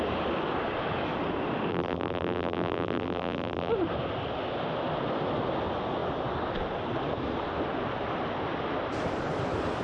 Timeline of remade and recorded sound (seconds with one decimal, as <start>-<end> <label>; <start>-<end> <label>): 0.0-1.7 recorded; 1.7-3.7 remade; 3.7-9.8 recorded